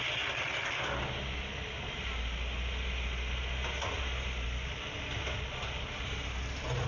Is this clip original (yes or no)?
yes